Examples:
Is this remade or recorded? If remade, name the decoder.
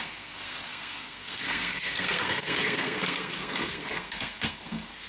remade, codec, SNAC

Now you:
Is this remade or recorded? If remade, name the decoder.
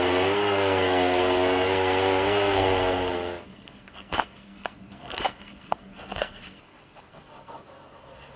remade, codec, SNAC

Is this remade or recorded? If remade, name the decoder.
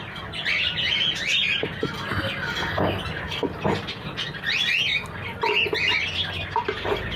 recorded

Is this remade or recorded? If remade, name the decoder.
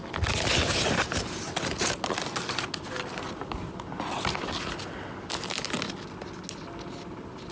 recorded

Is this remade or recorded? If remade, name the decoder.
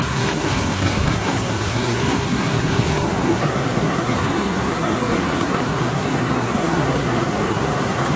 remade, codec, SNAC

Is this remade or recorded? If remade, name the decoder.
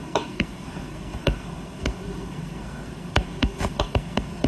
remade, codec, SNAC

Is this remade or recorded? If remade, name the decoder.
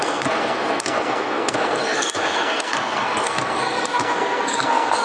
remade, codec, SNAC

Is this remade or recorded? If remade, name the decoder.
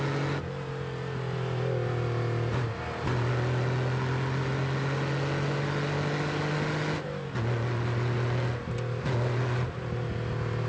recorded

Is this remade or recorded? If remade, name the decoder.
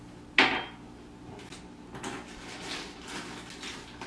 recorded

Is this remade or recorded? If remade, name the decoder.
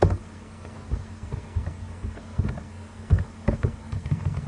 remade, codec, SNAC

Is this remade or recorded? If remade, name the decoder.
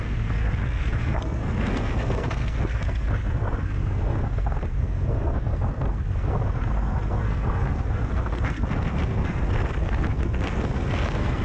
remade, codec, SNAC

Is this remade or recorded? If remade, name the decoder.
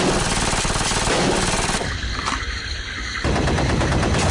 recorded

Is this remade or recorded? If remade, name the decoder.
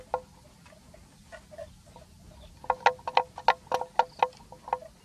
recorded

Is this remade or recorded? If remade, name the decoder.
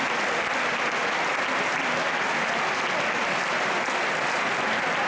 recorded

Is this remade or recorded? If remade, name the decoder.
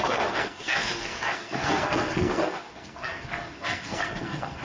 remade, codec, SNAC